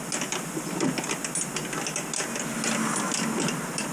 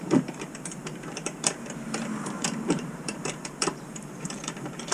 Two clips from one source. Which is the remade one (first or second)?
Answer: second